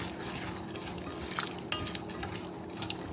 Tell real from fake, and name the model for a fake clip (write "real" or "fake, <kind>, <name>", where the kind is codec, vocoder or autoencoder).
real